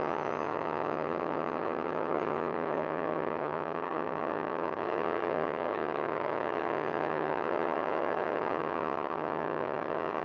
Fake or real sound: fake